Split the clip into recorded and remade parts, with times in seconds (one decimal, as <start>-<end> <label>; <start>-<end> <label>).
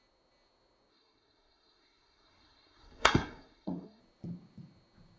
0.0-0.9 recorded; 0.9-4.0 remade; 4.0-5.2 recorded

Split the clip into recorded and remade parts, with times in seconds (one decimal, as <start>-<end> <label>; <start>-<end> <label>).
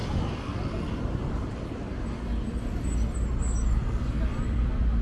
0.0-5.0 recorded